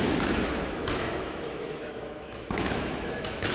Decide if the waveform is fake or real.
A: fake